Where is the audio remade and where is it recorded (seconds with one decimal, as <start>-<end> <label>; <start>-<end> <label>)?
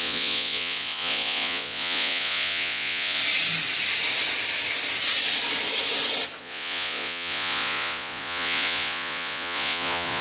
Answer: 0.0-3.2 remade; 3.2-6.4 recorded; 6.4-10.2 remade